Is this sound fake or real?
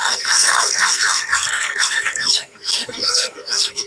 fake